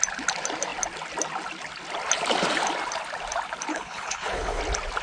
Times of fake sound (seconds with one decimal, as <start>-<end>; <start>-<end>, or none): 3.7-4.6